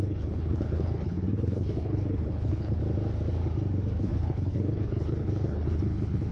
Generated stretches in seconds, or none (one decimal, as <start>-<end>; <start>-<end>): 0.0-2.8; 4.0-6.3